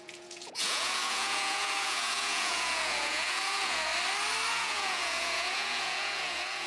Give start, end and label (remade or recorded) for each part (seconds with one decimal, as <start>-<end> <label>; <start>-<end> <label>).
0.0-3.9 remade; 3.9-4.5 recorded; 4.5-6.7 remade